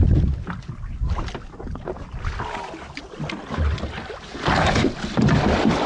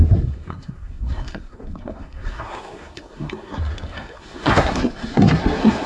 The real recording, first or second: first